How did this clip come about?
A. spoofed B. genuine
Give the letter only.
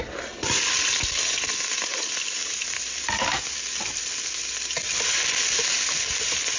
B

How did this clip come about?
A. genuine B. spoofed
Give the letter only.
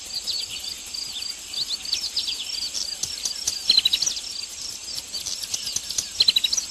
A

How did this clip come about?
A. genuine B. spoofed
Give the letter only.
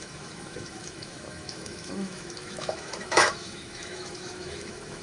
B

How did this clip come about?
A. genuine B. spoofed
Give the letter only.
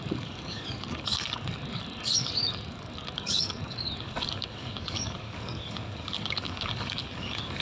B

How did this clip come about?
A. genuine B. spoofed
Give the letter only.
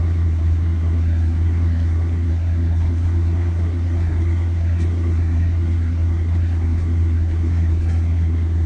B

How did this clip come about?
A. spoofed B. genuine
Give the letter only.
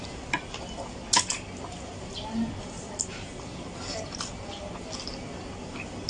B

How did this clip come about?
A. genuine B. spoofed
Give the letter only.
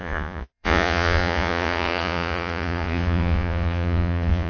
B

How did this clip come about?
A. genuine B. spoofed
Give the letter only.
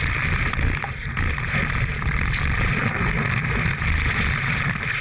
A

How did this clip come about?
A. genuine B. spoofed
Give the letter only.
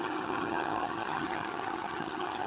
B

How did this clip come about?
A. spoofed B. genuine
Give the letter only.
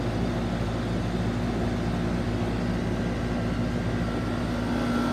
B